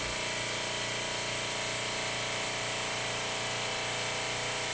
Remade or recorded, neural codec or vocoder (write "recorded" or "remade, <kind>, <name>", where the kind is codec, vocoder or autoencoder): recorded